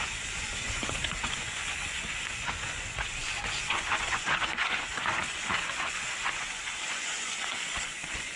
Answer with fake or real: fake